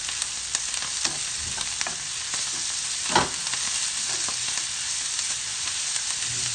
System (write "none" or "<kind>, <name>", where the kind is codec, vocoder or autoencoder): none